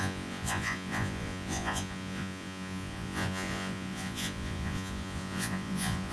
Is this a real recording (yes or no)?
no